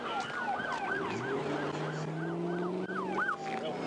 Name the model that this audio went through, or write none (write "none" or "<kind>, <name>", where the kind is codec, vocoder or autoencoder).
none